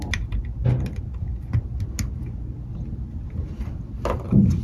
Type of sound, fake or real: fake